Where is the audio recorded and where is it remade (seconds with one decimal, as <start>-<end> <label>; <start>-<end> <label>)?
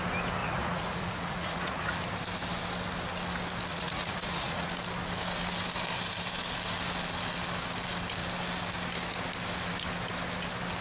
0.0-0.4 recorded; 0.4-2.1 remade; 2.1-3.7 recorded; 3.7-4.7 remade; 4.7-10.8 recorded